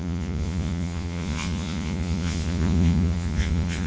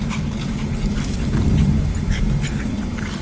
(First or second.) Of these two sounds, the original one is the second